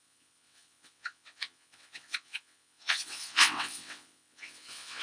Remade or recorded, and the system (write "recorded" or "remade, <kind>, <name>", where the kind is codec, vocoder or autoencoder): remade, vocoder, WaveNeXt